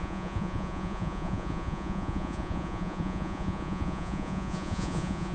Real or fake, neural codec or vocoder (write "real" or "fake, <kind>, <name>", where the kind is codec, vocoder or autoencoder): fake, vocoder, Vocos